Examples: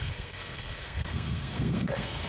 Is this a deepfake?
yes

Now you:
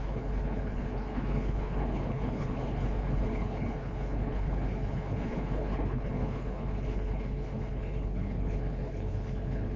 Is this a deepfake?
yes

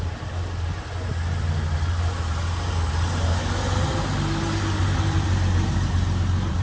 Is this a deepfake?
no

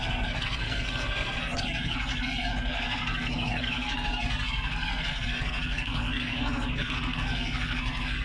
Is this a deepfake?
yes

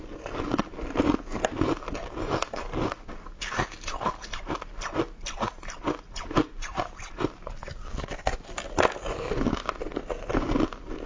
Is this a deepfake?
no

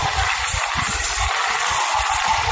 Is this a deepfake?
no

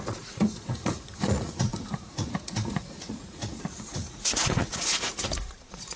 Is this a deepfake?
yes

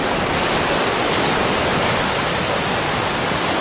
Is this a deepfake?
no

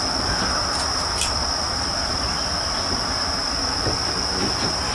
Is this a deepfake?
yes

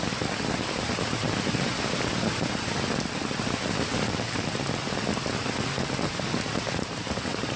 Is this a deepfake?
no